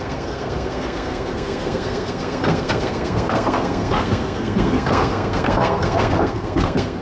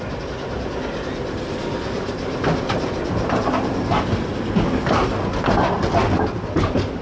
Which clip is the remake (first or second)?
first